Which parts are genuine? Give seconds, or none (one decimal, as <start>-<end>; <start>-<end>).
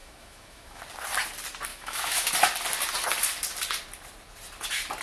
0.8-1.7; 2.3-5.0